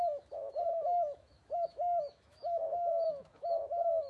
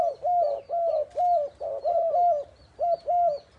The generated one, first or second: first